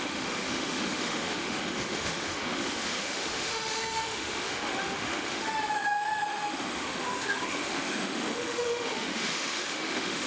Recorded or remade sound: remade